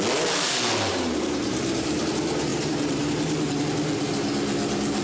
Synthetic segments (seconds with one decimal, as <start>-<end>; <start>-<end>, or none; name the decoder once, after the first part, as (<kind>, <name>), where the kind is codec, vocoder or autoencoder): 0.9-2.0 (vocoder, BigVGAN v2); 2.5-3.6